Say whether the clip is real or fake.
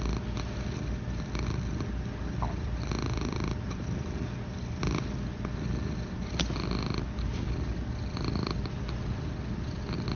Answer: real